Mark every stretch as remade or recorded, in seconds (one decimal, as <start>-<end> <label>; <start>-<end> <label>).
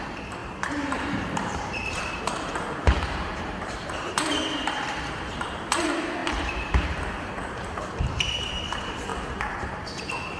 0.0-10.4 remade